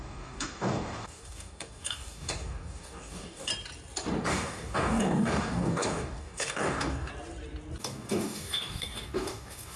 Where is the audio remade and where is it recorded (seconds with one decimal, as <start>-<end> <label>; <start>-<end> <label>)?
0.0-3.5 remade; 3.5-4.3 recorded; 4.3-7.1 remade; 7.1-7.8 recorded; 7.8-9.8 remade

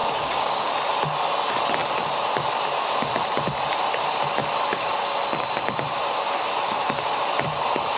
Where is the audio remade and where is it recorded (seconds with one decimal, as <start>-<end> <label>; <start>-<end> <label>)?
0.0-0.7 remade; 0.7-8.0 recorded

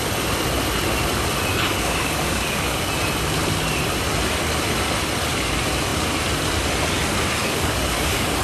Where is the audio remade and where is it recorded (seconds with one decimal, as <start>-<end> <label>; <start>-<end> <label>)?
0.0-1.5 recorded; 1.5-2.9 remade; 2.9-7.4 recorded; 7.4-8.4 remade